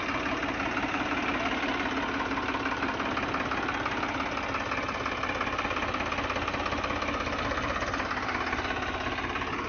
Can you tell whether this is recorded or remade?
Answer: recorded